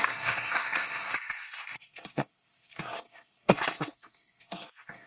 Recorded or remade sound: remade